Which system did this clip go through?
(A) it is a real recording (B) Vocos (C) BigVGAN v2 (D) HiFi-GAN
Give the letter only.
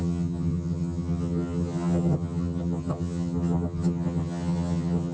D